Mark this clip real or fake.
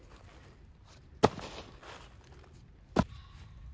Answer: real